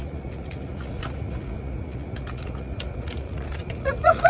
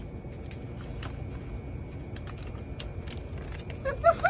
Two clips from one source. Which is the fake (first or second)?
first